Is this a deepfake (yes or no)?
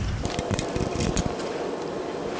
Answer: no